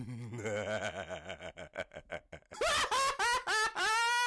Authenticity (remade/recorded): recorded